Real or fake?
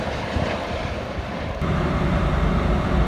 fake